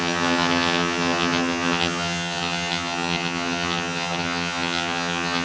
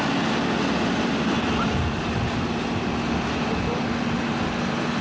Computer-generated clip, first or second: first